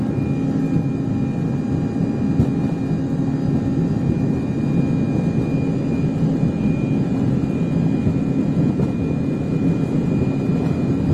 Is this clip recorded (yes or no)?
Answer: yes